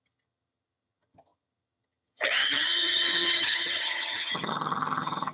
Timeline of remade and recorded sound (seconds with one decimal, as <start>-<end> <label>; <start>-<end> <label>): 0.0-5.3 remade